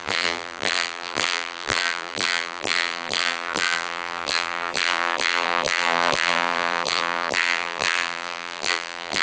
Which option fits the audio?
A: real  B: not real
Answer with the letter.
B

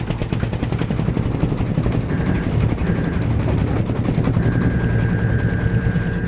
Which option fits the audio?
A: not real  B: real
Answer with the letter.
B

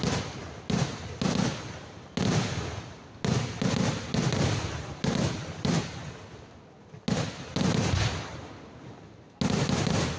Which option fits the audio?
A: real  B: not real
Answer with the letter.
A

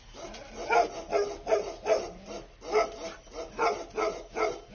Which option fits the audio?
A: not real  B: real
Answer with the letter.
B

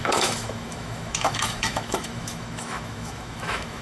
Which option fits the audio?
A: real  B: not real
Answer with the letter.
B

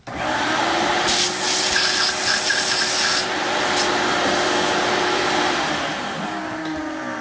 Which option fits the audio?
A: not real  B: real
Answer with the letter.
B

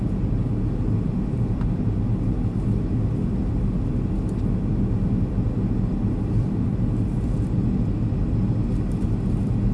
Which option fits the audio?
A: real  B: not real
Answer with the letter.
A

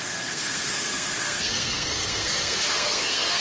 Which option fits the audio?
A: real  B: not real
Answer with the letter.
B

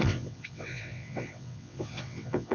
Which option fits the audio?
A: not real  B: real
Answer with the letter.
A